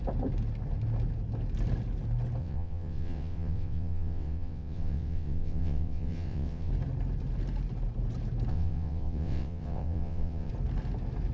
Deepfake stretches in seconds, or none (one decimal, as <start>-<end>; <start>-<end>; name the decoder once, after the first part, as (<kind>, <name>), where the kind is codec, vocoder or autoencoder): 2.4-6.7 (vocoder, WaveNeXt); 8.5-10.5